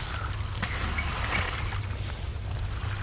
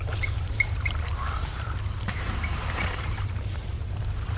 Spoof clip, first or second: second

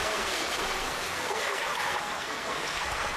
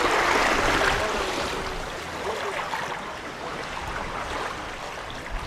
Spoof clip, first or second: first